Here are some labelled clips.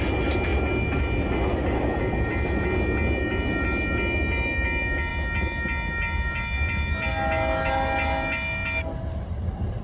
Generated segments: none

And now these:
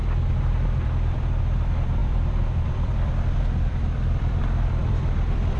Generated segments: 0.0-1.4 (vocoder, BigVGAN v2); 2.0-5.6

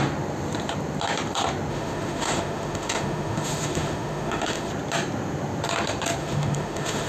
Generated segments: 1.7-4.7 (autoencoder, DAC-VAE); 6.2-7.1

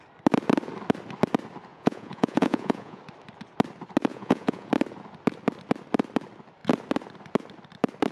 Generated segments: 1.7-3.0 (vocoder, Vocos); 4.1-4.7

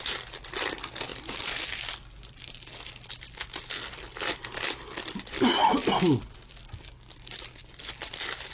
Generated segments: none

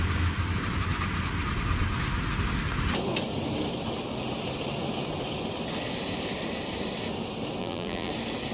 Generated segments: 7.6-8.1 (vocoder, BigVGAN v2)

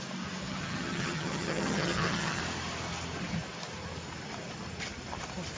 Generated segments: 0.4-2.4 (vocoder, HiFi-GAN)